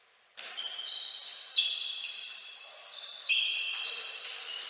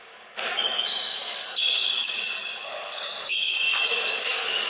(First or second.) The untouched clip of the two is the first